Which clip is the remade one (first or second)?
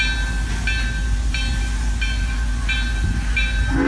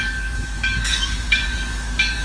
second